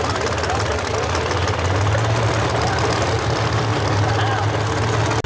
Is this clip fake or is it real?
real